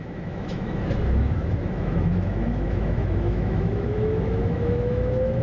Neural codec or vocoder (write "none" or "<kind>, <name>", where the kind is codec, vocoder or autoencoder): autoencoder, DAC-VAE